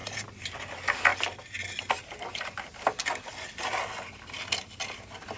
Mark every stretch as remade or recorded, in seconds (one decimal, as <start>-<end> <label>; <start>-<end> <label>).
0.0-5.4 recorded